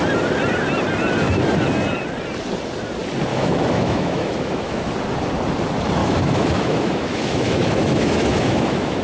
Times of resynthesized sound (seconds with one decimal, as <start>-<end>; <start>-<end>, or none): 3.3-4.9; 6.0-9.0